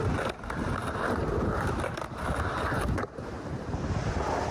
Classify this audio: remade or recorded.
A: recorded